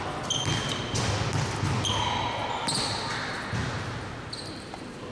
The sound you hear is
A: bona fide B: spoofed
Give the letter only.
A